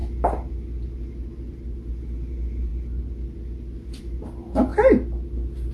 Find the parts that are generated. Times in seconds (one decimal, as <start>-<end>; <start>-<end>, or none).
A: none